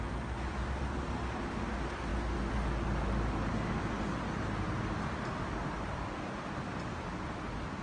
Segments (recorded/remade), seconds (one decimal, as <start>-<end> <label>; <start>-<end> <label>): 0.0-7.8 recorded